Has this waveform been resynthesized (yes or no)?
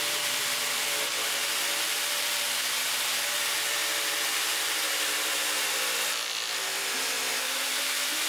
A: yes